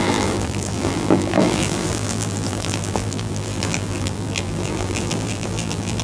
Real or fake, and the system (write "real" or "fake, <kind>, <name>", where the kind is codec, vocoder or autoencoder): fake, vocoder, BigVGAN v2